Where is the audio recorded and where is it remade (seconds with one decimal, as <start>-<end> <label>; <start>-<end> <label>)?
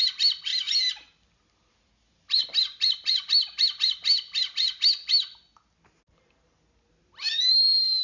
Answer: 0.0-8.0 recorded